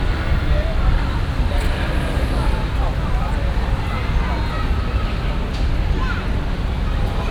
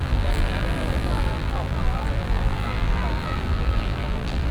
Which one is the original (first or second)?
first